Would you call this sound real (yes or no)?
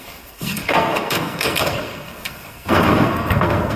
no